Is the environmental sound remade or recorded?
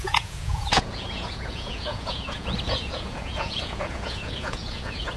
remade